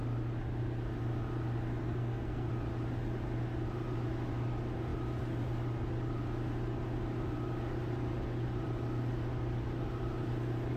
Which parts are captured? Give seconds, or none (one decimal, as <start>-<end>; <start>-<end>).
0.0-1.8; 2.5-10.8